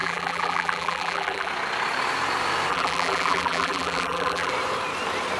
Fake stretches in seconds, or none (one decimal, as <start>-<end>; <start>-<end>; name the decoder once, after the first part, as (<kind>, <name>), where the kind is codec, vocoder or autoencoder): 0.0-1.5 (vocoder, BigVGAN v2); 2.7-4.5